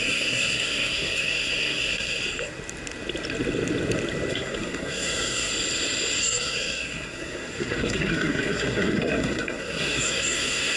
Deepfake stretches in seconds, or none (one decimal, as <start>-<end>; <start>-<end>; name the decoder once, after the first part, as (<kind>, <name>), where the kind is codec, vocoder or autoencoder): 0.0-2.2 (codec, SNAC); 4.3-5.5; 6.2-10.8